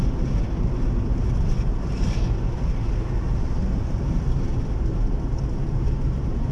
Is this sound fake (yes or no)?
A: no